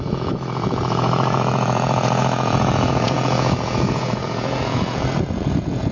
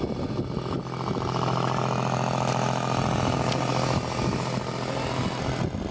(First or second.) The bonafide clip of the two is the second